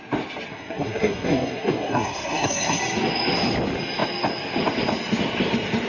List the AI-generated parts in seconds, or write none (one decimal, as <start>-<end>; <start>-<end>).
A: 0.5-2.8